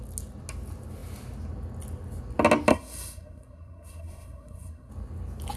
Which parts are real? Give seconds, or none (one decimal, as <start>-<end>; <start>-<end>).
0.0-2.7; 4.9-5.6